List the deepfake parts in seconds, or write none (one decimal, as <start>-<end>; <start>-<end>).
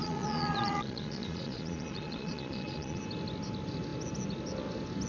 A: 0.0-3.0